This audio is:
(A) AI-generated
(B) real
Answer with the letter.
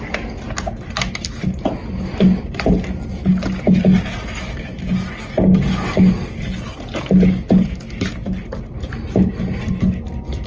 B